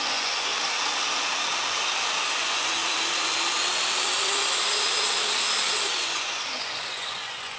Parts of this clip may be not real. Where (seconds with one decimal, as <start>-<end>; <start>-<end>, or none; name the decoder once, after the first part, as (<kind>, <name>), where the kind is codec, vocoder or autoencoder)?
0.0-0.5 (vocoder, Vocos); 2.1-2.8; 6.0-7.6

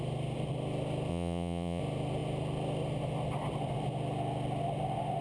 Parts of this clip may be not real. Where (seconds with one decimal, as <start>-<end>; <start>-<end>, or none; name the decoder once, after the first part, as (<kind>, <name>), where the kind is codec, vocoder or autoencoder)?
1.1-1.8 (vocoder, Vocos)

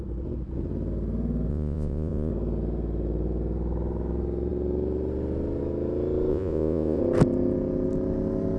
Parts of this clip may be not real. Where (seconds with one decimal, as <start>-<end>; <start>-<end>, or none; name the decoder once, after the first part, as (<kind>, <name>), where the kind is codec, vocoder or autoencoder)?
1.5-2.3 (vocoder, Vocos); 6.3-7.0

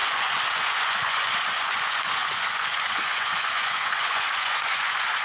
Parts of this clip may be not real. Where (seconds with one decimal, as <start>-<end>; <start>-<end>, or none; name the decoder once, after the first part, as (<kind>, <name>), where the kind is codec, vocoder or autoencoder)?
0.0-5.2 (vocoder, Vocos)

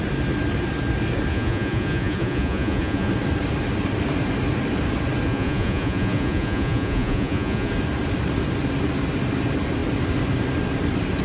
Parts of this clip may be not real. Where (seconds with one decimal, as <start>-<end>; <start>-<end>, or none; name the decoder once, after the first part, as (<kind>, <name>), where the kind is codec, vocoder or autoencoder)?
1.3-3.1 (vocoder, Vocos); 5.3-7.7

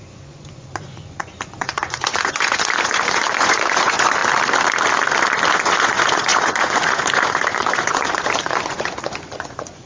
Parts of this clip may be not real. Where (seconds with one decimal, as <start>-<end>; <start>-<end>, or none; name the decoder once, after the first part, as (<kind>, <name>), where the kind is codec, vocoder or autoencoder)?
0.0-4.2 (vocoder, Vocos); 5.5-9.9

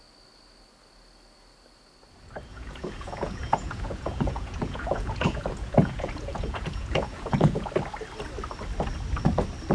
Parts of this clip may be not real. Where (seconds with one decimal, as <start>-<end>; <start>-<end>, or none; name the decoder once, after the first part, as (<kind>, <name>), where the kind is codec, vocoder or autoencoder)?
2.5-7.7 (vocoder, Vocos)

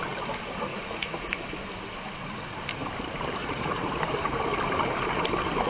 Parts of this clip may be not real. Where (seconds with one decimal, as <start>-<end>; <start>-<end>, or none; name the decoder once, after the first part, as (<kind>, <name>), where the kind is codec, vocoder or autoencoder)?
0.7-1.5 (vocoder, Vocos); 3.4-4.0